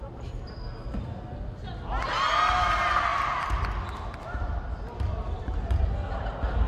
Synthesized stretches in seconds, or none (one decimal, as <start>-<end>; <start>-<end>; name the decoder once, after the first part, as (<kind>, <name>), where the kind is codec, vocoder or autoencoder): none